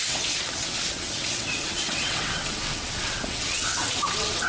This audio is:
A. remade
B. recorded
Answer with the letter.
A